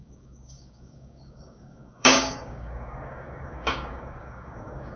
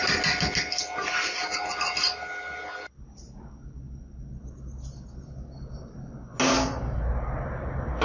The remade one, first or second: first